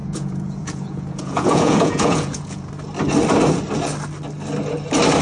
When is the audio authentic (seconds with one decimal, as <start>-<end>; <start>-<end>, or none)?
2.7-5.2